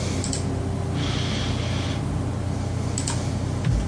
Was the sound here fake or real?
real